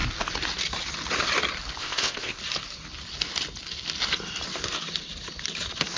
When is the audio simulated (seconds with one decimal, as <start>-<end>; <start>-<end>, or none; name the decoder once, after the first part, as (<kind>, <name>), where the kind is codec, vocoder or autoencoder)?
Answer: 1.8-2.4 (codec, ZipCodec)